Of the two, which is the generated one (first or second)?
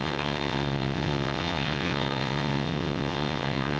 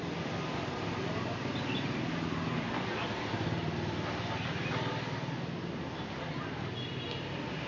first